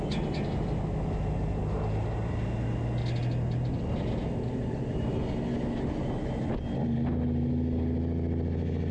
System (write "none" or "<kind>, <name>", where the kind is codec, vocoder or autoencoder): none